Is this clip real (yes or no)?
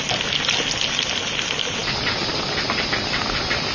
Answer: yes